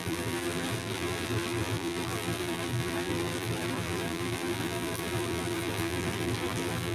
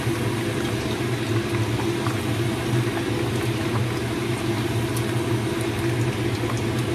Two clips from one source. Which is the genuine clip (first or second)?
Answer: second